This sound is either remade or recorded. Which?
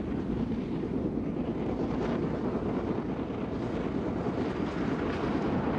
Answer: recorded